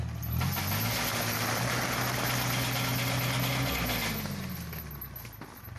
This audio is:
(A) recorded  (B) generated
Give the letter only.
A